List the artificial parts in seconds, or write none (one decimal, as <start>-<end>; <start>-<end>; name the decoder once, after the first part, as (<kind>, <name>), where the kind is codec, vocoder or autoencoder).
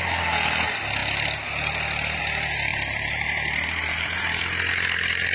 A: 2.7-4.4 (vocoder, BigVGAN v2)